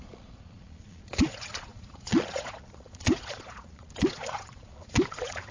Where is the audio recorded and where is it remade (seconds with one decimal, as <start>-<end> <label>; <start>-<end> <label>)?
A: 0.0-5.5 remade